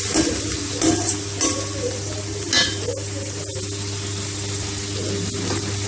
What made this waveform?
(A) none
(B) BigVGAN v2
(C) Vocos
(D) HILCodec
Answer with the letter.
A